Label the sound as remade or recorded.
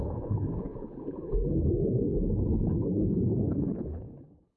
remade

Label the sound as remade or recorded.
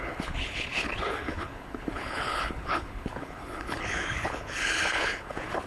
remade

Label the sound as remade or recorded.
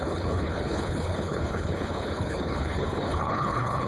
remade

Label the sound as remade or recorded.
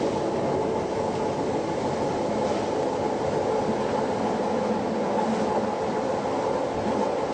recorded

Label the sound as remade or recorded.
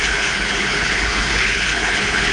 remade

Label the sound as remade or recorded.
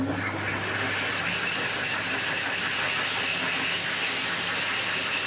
recorded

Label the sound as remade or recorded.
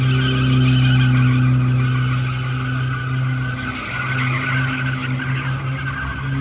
recorded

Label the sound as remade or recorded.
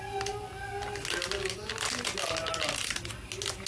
recorded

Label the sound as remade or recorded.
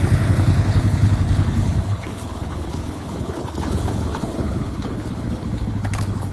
remade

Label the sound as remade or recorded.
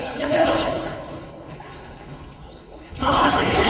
remade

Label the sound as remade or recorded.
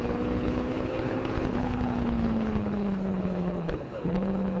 remade